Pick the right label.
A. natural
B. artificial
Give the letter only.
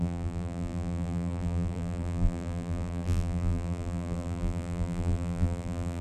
B